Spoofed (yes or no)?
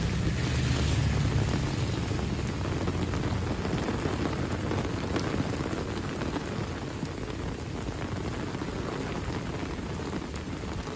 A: no